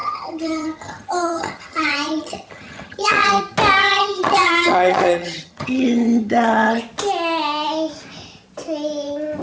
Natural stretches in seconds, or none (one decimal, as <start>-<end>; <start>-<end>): 3.4-3.8; 6.8-9.4